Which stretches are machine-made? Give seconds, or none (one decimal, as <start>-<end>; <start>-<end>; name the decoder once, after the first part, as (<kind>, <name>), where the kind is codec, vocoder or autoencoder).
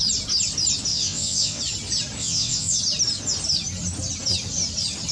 0.9-1.6 (vocoder, WaveNeXt); 2.2-2.8